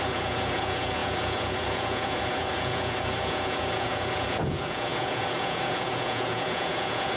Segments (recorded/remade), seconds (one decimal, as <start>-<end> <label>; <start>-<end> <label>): 0.0-7.2 remade